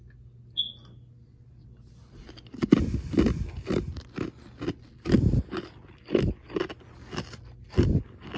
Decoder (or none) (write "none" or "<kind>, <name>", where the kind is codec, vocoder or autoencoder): none